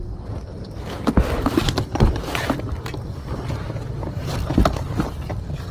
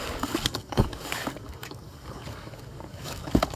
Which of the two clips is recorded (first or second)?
first